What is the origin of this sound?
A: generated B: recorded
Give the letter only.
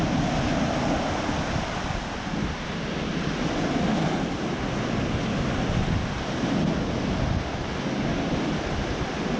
B